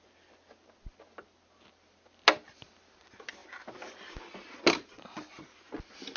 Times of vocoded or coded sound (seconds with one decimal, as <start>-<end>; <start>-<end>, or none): none